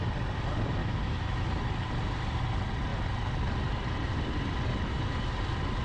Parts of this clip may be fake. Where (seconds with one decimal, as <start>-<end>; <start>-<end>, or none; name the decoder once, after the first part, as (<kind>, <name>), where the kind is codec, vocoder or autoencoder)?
0.8-1.5 (autoencoder, DAC-VAE)